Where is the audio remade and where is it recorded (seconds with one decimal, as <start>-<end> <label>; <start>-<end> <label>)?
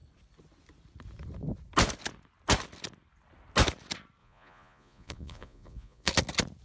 0.0-4.2 recorded; 4.2-6.1 remade; 6.1-6.6 recorded